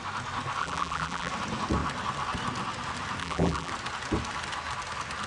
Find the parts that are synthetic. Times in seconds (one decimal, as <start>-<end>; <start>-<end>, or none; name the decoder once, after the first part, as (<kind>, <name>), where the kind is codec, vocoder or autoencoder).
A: 0.6-1.3 (vocoder, BigVGAN v2); 3.2-3.7